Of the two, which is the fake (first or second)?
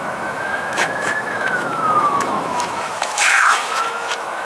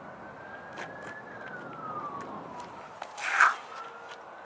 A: first